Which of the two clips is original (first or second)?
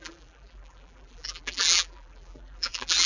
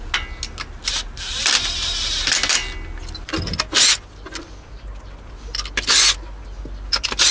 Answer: second